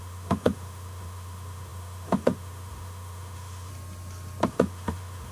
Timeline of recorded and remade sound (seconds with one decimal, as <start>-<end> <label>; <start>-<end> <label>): 0.0-3.7 remade; 3.7-4.5 recorded; 4.5-5.3 remade